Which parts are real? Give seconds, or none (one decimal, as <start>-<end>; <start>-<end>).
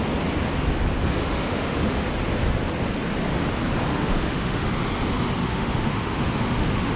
0.0-1.2; 2.1-3.9; 4.7-5.4